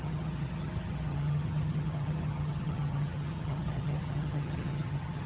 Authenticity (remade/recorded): remade